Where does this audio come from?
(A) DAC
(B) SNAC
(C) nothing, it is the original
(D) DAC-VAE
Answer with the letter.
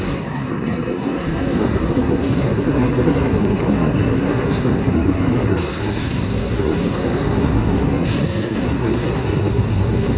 B